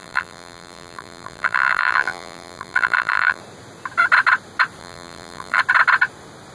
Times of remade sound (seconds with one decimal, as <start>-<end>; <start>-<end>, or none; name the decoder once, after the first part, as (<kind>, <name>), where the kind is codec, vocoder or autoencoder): 0.0-3.4 (vocoder, BigVGAN v2); 4.8-5.6